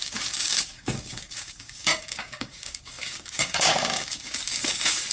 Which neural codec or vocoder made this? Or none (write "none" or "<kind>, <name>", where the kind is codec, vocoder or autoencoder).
codec, DAC